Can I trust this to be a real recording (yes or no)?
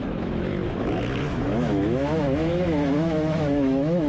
no